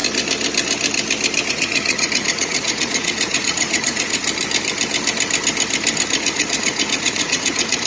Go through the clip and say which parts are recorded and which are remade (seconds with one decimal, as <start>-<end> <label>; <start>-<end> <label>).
0.0-1.5 recorded; 1.5-4.2 remade; 4.2-6.2 recorded; 6.2-7.9 remade